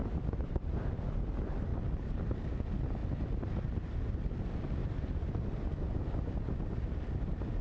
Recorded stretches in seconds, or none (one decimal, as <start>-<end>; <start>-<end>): 0.6-4.8; 5.3-7.6